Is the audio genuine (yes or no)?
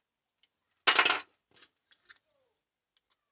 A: yes